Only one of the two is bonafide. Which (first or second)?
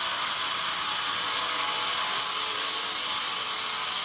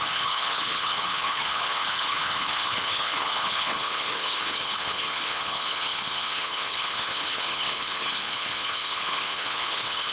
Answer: first